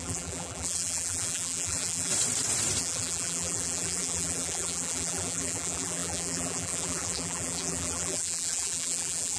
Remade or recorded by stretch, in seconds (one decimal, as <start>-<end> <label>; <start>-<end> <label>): 0.0-2.1 remade; 2.1-2.8 recorded; 2.8-9.4 remade